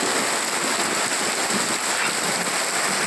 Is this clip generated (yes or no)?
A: no